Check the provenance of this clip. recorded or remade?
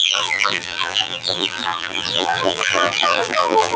remade